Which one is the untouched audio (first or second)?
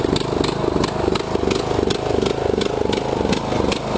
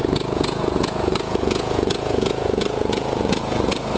first